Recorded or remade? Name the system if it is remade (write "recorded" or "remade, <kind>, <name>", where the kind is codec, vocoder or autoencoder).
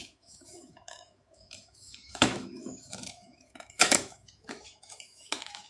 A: remade, autoencoder, DAC-VAE